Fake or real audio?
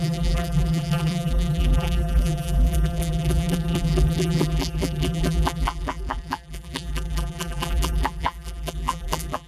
fake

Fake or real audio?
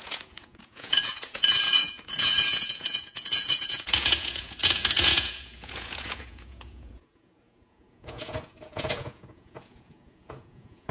fake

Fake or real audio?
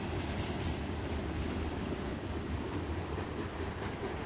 real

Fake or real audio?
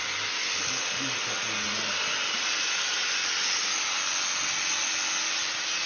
real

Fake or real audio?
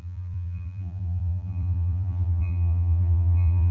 fake